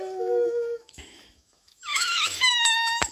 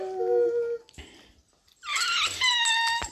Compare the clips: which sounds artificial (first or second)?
first